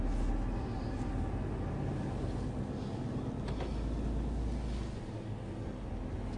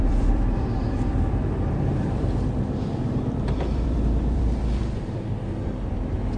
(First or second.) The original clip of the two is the first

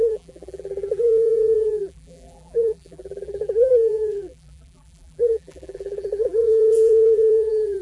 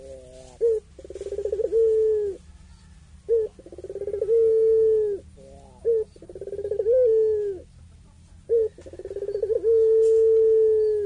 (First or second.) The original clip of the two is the second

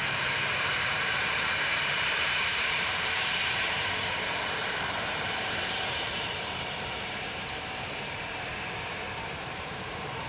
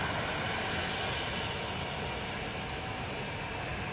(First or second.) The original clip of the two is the second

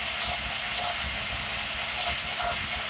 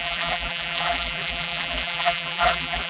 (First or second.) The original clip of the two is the first